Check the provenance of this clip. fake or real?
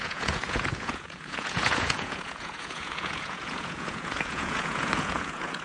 fake